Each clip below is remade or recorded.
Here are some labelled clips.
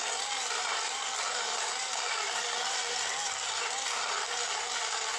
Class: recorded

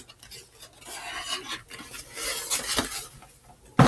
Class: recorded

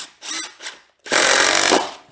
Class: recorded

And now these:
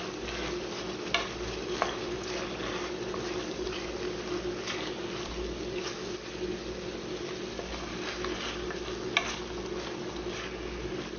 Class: recorded